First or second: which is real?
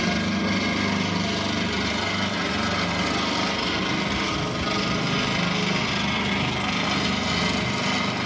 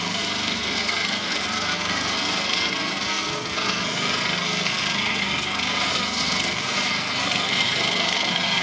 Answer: first